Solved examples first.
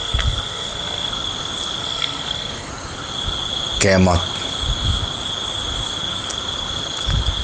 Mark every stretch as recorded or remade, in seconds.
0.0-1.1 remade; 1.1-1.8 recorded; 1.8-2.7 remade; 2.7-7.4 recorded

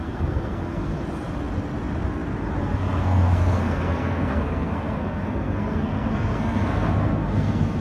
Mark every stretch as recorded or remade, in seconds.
0.0-0.9 remade; 0.9-2.6 recorded; 2.6-7.8 remade

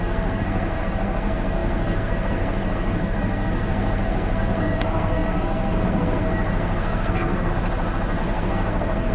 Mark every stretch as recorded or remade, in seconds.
0.0-7.5 remade; 7.5-8.2 recorded; 8.2-9.1 remade